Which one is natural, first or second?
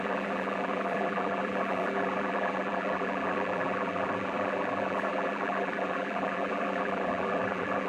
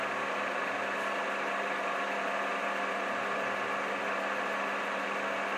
second